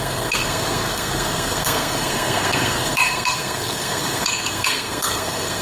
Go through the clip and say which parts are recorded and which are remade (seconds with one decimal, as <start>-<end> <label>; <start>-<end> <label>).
0.0-5.6 remade